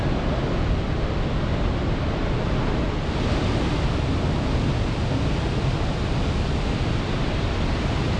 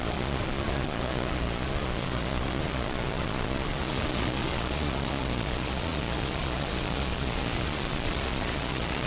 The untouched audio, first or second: first